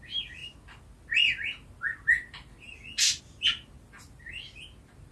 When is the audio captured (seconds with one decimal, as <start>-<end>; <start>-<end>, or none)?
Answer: 0.0-5.1